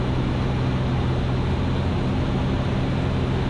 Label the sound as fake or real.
real